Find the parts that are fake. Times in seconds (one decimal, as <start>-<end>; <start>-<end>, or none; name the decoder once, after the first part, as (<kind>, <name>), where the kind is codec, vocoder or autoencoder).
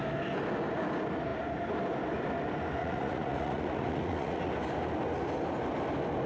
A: 2.8-4.5 (vocoder, Vocos)